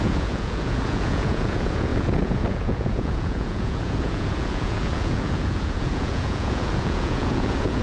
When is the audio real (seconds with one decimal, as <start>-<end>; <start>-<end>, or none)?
none